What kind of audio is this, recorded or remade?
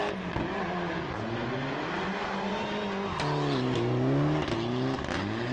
recorded